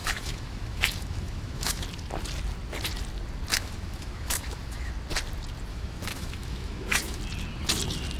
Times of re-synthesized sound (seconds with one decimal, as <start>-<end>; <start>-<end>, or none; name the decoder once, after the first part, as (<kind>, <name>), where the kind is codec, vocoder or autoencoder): 0.0-1.8 (autoencoder, DAC-VAE); 3.5-4.9; 5.7-7.2